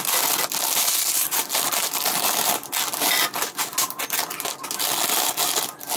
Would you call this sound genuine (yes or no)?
yes